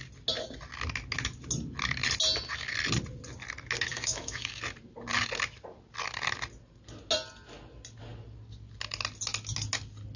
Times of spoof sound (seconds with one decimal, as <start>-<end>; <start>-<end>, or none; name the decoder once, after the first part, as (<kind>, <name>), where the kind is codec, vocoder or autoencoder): 3.9-4.6 (autoencoder, DAC-VAE)

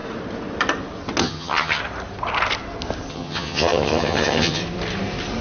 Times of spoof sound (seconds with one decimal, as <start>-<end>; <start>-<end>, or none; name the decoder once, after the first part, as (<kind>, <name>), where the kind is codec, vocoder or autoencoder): 1.2-1.8 (vocoder, HiFi-GAN); 3.1-4.6

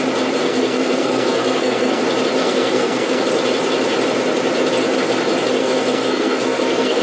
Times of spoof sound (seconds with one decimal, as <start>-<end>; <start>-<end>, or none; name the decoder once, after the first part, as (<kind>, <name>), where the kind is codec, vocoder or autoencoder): 0.4-2.0 (codec, SNAC); 2.4-3.2; 5.6-7.0

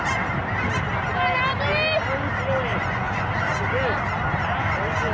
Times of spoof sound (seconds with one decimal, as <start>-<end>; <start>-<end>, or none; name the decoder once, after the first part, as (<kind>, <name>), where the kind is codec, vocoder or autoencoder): 2.7-3.3 (vocoder, Vocos)

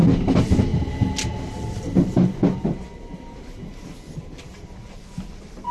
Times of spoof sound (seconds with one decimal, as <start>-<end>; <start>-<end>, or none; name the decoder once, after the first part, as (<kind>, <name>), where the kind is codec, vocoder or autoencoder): 0.0-0.7 (vocoder, BigVGAN v2); 4.1-5.7

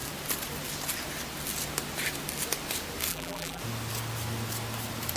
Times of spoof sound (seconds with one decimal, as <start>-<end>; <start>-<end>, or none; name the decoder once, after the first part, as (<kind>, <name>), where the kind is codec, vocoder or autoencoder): 3.1-3.6 (vocoder, BigVGAN v2)

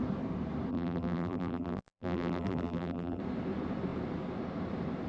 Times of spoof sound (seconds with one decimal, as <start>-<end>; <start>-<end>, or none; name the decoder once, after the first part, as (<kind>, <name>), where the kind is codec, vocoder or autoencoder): 0.7-3.2 (vocoder, BigVGAN v2)

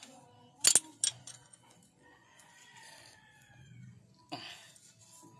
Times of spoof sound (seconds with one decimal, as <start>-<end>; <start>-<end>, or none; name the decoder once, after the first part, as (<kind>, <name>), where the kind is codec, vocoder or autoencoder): 1.1-4.0 (vocoder, Vocos)